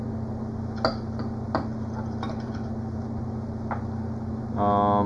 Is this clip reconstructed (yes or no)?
no